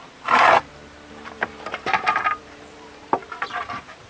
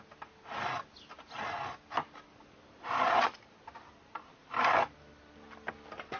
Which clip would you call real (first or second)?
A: second